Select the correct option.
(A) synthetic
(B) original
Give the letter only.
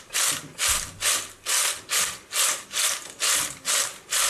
B